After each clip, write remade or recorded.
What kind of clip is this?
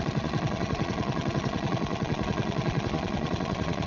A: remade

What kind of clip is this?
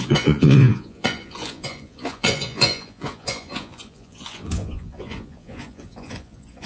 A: remade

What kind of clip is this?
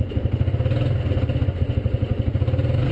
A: recorded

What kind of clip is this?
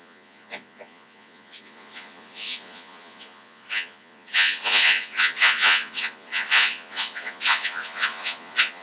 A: remade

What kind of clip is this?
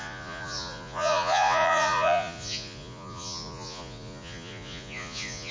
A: remade